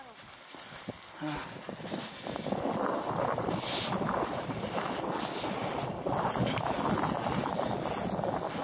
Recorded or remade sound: recorded